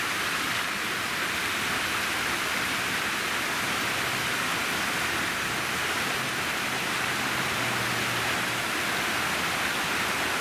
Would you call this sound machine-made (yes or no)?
no